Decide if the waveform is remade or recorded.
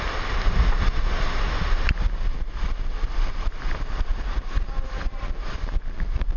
recorded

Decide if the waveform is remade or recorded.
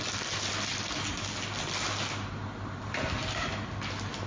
recorded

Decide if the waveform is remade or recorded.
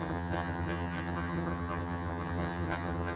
remade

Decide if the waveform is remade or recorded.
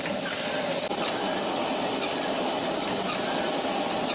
recorded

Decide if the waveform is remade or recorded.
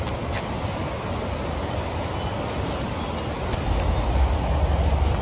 recorded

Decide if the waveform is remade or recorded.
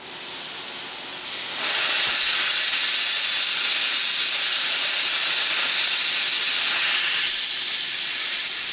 recorded